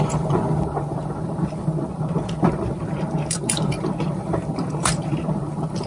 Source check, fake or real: fake